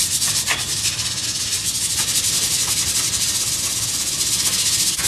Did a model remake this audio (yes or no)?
no